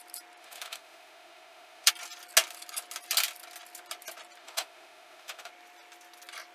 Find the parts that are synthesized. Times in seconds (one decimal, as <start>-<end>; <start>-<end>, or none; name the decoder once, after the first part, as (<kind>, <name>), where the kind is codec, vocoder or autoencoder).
0.4-1.9 (autoencoder, DAC-VAE); 4.4-5.5